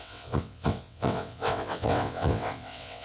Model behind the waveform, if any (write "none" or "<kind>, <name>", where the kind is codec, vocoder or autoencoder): vocoder, WaveNeXt